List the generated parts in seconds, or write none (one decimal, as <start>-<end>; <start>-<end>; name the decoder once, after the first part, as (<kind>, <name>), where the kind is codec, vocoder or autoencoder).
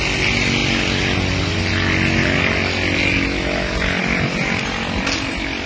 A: none